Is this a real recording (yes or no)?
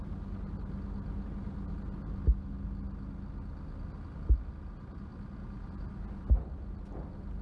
yes